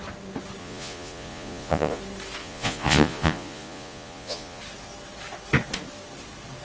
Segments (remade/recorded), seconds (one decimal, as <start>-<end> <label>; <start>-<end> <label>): 0.0-0.6 recorded; 0.6-2.0 remade; 2.0-2.4 recorded; 2.4-4.6 remade; 4.6-6.6 recorded